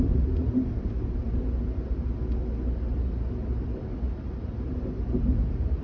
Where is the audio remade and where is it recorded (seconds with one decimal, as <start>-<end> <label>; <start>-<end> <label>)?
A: 0.0-1.2 remade; 1.2-4.7 recorded; 4.7-5.8 remade